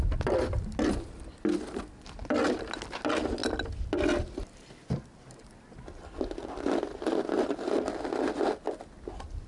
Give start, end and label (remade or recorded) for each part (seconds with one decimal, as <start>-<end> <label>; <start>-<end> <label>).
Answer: 0.0-9.5 recorded